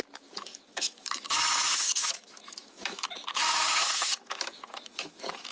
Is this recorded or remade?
remade